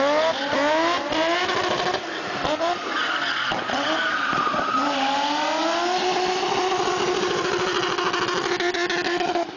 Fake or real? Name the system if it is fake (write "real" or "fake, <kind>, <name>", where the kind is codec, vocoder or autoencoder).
real